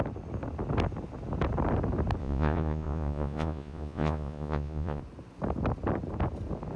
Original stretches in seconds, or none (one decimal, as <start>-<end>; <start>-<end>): 0.0-2.2; 5.0-6.8